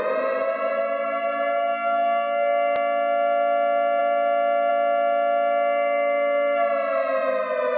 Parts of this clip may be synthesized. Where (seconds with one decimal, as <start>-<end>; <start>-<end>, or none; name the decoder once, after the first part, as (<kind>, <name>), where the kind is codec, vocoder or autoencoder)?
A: none